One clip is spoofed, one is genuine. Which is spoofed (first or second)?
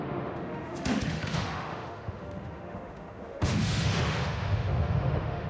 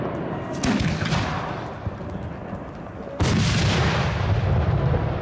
first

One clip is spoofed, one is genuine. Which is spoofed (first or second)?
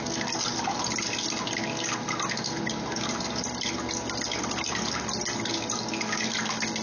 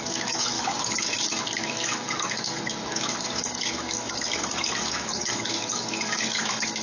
second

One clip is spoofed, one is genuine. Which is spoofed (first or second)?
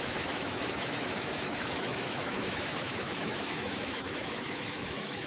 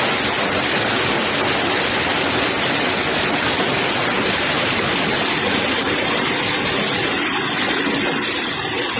first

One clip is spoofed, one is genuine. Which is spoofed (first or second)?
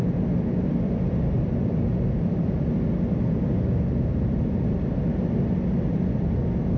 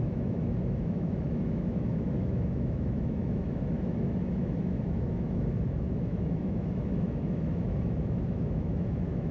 second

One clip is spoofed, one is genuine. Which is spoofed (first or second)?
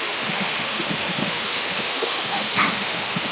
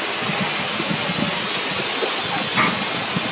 first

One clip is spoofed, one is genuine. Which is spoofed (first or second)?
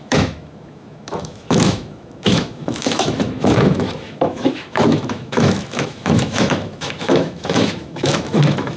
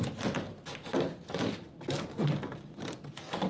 first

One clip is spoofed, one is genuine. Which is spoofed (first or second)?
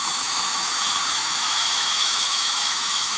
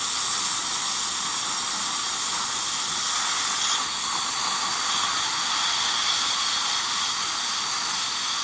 first